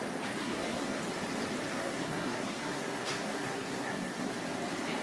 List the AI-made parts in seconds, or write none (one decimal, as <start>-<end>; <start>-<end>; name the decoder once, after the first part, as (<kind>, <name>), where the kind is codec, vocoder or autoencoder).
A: 0.4-1.0 (codec, SNAC); 1.7-4.3